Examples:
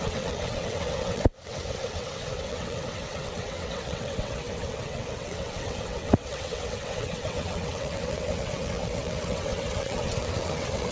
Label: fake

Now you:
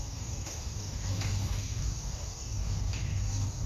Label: fake